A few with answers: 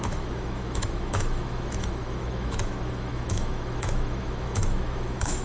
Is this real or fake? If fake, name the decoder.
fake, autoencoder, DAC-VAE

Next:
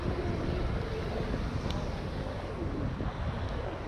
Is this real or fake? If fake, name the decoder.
real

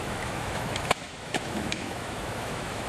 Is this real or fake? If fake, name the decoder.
fake, autoencoder, DAC-VAE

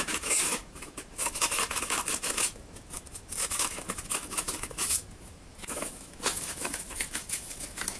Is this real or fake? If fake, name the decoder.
fake, autoencoder, DAC-VAE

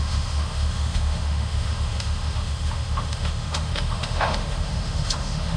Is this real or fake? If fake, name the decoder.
fake, autoencoder, DAC-VAE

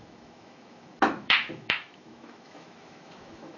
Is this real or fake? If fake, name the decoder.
fake, autoencoder, DAC-VAE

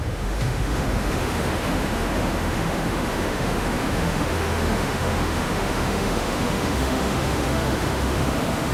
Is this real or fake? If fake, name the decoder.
fake, autoencoder, DAC-VAE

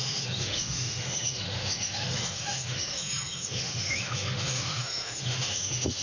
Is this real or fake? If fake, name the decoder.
fake, autoencoder, DAC-VAE